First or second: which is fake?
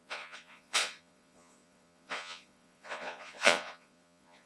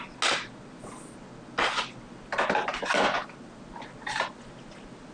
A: first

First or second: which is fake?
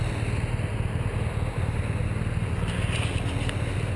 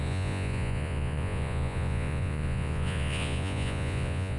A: second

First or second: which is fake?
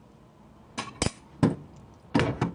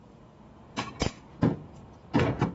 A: second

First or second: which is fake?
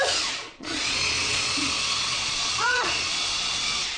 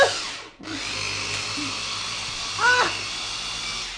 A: first